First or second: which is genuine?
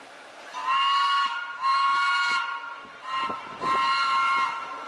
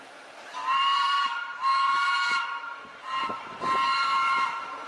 first